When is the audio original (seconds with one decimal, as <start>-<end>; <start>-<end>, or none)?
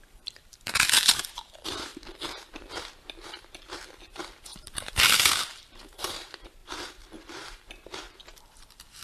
1.9-2.5